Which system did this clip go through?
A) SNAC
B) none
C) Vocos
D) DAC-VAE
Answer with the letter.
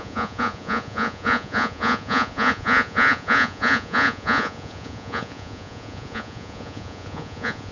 C